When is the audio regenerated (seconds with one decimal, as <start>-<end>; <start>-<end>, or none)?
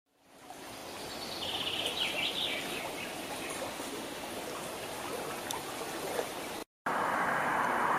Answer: 3.7-4.3